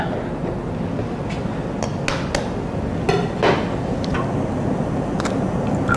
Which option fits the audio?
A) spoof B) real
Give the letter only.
B